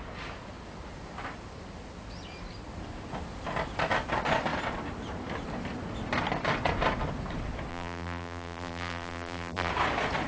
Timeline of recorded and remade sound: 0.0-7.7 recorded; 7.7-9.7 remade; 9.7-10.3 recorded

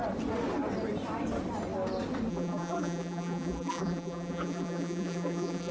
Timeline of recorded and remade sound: 0.0-2.3 recorded; 2.3-5.7 remade

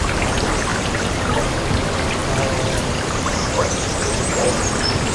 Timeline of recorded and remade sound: 0.0-0.7 recorded; 0.7-1.6 remade; 1.6-2.2 recorded; 2.2-4.3 remade; 4.3-5.1 recorded

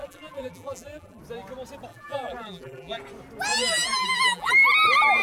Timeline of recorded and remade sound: 0.0-1.2 remade; 1.2-1.9 recorded; 1.9-3.0 remade; 3.0-3.5 recorded; 3.5-4.5 remade; 4.5-5.2 recorded

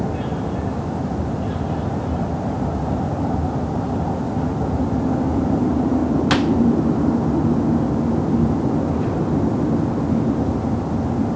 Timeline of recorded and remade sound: 0.0-11.4 recorded

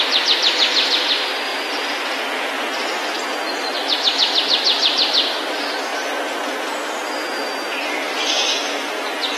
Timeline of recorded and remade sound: 0.0-9.4 recorded